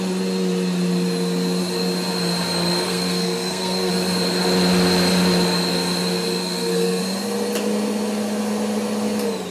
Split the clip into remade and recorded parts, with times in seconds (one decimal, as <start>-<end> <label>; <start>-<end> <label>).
0.0-2.7 recorded; 2.7-3.9 remade; 3.9-6.4 recorded; 6.4-7.0 remade; 7.0-9.5 recorded